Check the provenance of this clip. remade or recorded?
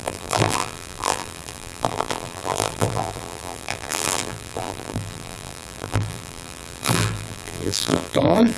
remade